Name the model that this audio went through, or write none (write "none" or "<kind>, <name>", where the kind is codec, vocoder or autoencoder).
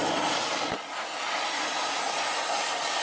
vocoder, BigVGAN v2